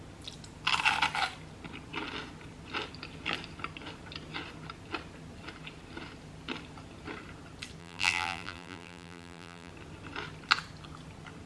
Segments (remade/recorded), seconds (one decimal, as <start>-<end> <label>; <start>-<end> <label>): 0.0-7.8 recorded; 7.8-9.7 remade; 9.7-11.5 recorded